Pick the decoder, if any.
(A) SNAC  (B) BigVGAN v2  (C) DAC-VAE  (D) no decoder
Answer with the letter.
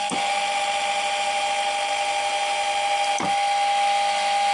D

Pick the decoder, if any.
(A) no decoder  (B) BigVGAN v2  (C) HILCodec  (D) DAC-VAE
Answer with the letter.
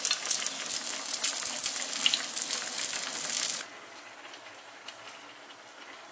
A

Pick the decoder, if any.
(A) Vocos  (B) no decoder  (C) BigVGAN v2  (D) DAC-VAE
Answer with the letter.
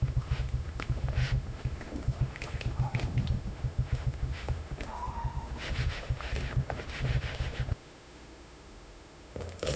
D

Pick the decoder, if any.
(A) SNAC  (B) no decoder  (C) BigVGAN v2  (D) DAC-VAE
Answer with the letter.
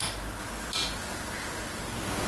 B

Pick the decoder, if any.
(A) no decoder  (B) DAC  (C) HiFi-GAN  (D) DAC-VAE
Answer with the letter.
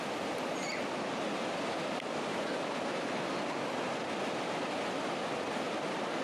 A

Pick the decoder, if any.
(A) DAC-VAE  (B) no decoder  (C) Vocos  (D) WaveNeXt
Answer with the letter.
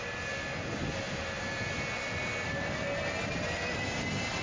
B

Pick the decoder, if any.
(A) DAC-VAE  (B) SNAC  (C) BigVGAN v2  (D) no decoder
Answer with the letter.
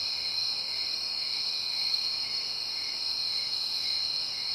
A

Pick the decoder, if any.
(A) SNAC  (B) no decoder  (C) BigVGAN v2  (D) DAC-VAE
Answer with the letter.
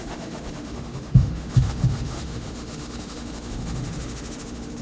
D